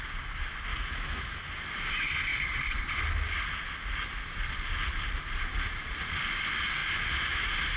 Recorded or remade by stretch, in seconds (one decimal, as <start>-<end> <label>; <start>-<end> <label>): 0.0-0.7 recorded; 0.7-1.5 remade; 1.5-7.8 recorded